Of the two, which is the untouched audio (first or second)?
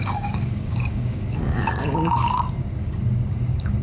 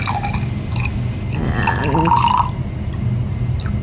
second